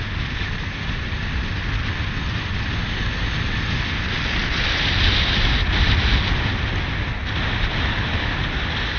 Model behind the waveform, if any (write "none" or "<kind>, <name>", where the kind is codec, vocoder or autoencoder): none